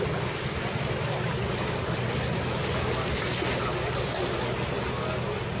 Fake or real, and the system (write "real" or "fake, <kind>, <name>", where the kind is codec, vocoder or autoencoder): real